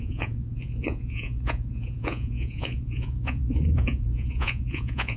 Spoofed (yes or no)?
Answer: yes